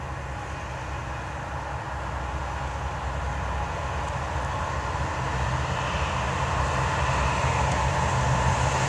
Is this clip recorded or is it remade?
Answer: recorded